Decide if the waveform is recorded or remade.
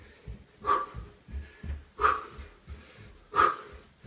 recorded